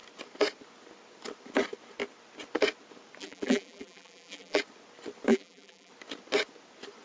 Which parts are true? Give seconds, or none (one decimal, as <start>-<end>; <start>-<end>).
0.0-3.2; 4.6-5.3; 5.9-7.0